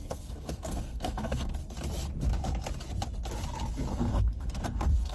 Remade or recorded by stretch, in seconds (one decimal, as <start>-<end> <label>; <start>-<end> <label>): 0.0-1.6 remade; 1.6-3.9 recorded; 3.9-5.1 remade